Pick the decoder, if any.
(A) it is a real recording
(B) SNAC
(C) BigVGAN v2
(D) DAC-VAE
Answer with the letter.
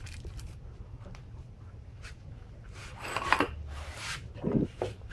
C